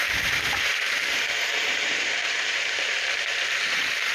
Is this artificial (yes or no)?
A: yes